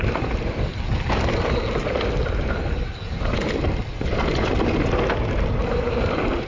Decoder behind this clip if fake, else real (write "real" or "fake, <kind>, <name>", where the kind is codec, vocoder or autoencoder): real